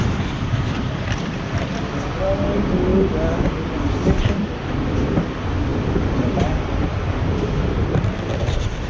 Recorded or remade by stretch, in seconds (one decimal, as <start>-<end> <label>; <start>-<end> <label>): 0.0-2.9 remade; 2.9-4.3 recorded; 4.3-5.7 remade; 5.7-6.2 recorded; 6.2-8.9 remade